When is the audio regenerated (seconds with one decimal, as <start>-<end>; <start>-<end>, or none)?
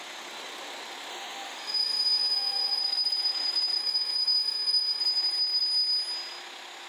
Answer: 1.1-2.8; 3.8-5.0